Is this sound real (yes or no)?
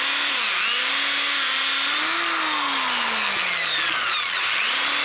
yes